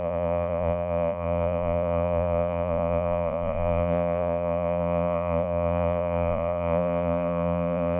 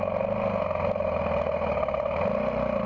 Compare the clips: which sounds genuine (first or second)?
second